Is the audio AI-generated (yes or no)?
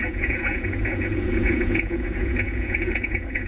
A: yes